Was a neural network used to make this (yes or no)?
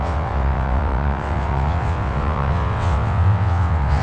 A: yes